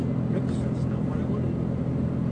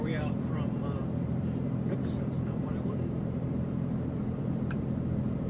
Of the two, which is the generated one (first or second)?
second